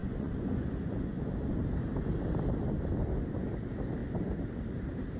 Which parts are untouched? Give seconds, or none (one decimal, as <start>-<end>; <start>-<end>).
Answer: 1.2-5.2